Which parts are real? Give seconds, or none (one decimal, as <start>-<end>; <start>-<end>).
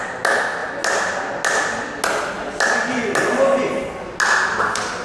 0.0-5.0